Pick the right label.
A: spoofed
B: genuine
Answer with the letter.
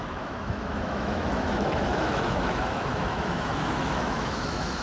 A